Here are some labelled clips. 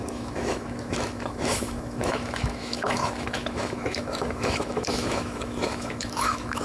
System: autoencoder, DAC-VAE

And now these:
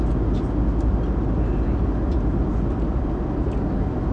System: none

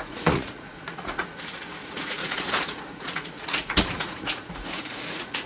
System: vocoder, Vocos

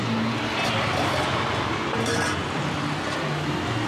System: none